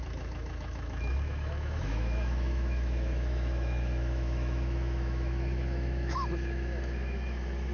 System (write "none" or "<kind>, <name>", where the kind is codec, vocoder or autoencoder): autoencoder, DAC-VAE